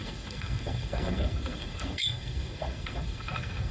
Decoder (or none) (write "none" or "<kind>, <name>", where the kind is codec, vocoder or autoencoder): codec, SNAC